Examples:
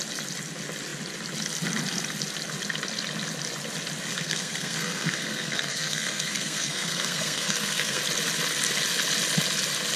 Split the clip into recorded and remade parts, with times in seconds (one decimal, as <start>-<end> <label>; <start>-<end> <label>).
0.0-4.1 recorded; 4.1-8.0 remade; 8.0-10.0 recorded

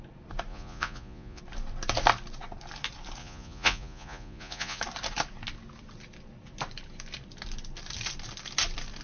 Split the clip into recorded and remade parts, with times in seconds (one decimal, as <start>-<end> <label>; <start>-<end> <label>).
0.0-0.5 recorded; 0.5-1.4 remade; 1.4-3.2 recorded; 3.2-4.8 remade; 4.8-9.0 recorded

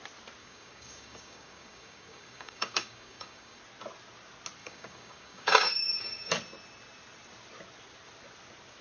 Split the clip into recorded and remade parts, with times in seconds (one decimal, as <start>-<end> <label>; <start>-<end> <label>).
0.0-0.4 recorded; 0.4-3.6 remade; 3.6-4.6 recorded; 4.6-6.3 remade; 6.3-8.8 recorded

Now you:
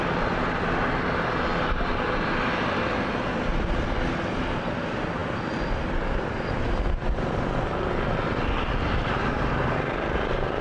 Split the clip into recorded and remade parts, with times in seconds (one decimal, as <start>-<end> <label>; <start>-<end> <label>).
0.0-10.6 recorded

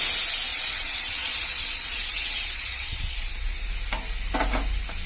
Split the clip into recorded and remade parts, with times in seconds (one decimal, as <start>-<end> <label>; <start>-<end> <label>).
0.0-0.5 recorded; 0.5-3.6 remade; 3.6-5.1 recorded

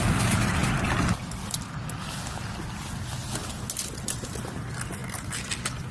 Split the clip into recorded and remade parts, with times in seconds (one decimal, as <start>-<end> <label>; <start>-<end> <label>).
0.0-0.6 recorded; 0.6-1.2 remade; 1.2-5.9 recorded

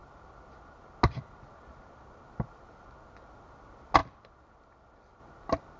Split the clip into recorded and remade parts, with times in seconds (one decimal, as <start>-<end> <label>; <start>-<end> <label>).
0.0-5.8 recorded